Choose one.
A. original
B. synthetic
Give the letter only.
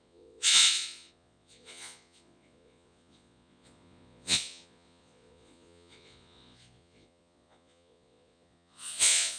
B